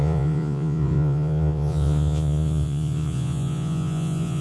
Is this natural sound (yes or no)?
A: no